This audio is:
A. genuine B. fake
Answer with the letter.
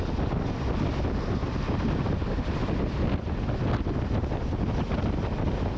A